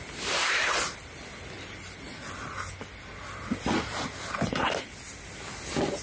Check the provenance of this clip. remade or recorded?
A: recorded